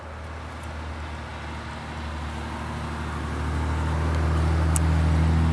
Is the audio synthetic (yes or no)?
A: no